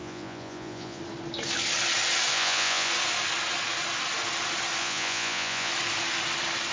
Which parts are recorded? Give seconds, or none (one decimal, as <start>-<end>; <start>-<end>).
1.0-2.3; 2.9-4.8; 5.7-6.7